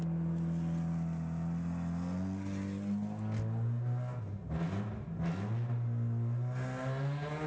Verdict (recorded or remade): recorded